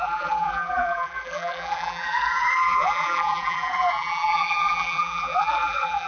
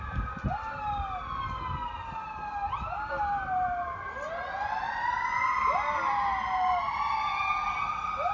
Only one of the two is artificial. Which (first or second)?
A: first